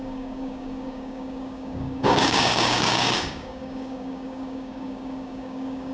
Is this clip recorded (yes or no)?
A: no